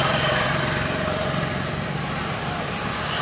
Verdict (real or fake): real